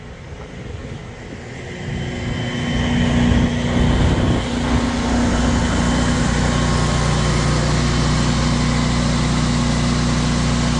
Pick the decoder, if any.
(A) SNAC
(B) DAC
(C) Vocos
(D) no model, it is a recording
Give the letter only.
D